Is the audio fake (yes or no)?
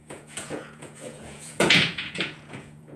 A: yes